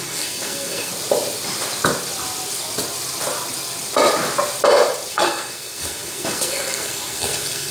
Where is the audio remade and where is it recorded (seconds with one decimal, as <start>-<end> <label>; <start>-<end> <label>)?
0.0-0.9 remade; 0.9-5.1 recorded; 5.1-7.7 remade